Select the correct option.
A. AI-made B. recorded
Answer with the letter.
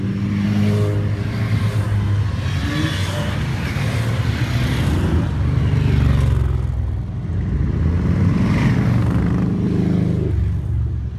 B